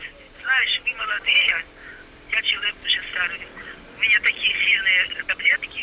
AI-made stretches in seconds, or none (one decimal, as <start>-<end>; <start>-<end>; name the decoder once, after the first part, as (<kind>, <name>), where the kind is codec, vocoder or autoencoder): 0.0-0.7 (codec, DAC); 1.3-1.8; 5.3-5.8